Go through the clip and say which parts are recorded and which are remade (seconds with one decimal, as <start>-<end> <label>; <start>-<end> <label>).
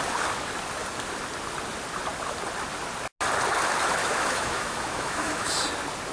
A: 0.0-4.0 recorded; 4.0-5.5 remade; 5.5-6.1 recorded